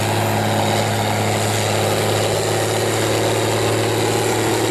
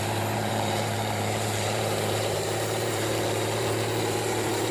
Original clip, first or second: first